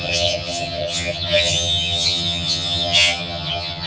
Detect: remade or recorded remade